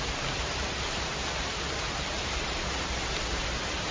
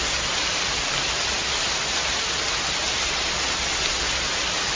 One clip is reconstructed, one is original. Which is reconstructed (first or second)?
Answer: first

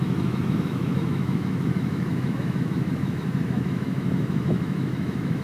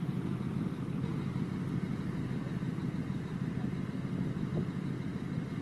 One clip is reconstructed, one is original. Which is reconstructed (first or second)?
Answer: first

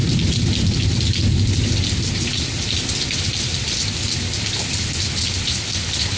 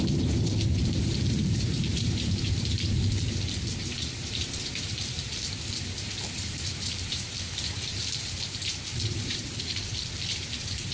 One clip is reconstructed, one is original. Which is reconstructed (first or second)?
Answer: second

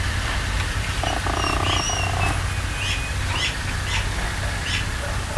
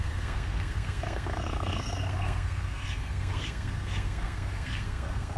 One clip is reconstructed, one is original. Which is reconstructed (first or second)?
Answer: second